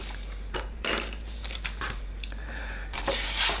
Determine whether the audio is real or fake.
fake